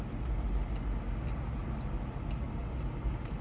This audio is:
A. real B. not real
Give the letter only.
A